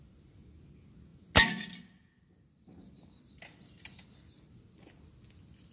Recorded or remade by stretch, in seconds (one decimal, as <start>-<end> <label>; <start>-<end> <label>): 0.0-5.7 recorded